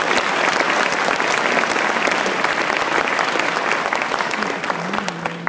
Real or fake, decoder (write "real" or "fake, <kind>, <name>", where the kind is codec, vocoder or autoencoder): real